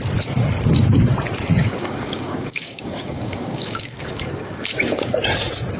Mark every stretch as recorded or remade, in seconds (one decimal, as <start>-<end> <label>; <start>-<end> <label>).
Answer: 0.0-1.6 recorded; 1.6-5.1 remade; 5.1-5.8 recorded